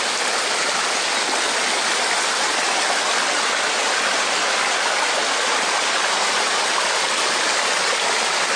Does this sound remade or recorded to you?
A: recorded